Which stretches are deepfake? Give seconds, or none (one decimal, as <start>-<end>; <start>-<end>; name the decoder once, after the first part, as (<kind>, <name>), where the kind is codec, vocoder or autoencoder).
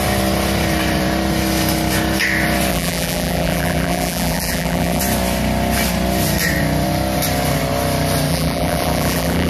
2.7-5.0 (vocoder, BigVGAN v2); 8.3-9.5